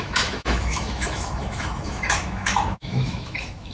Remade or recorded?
remade